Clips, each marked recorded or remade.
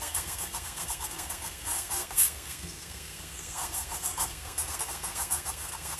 remade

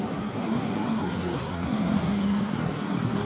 remade